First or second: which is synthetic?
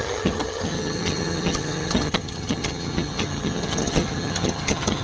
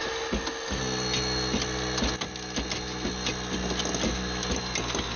first